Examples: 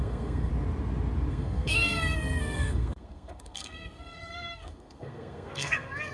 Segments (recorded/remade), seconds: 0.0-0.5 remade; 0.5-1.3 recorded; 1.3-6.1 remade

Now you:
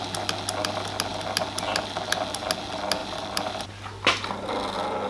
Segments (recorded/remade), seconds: 0.0-3.0 recorded; 3.0-3.7 remade; 3.7-5.1 recorded

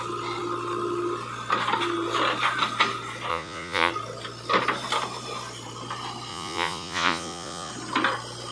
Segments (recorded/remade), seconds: 0.0-3.3 recorded; 3.3-3.9 remade; 3.9-6.3 recorded; 6.3-7.7 remade; 7.7-8.5 recorded

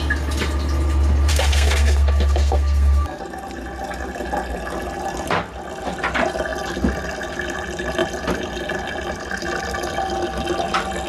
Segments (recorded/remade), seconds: 0.0-1.3 recorded; 1.3-3.2 remade; 3.2-11.1 recorded

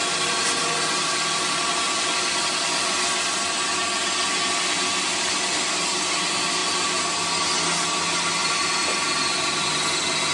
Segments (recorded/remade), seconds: 0.0-10.3 recorded

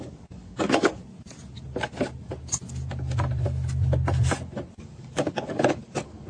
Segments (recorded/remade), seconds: 0.0-1.0 remade; 1.0-4.8 recorded; 4.8-6.3 remade